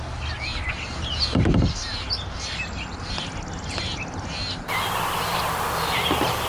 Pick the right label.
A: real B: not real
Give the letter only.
A